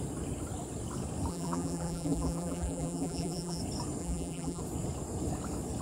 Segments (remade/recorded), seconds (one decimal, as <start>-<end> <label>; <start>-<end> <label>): 0.0-1.3 recorded; 1.3-3.6 remade; 3.6-4.0 recorded; 4.0-4.6 remade; 4.6-5.8 recorded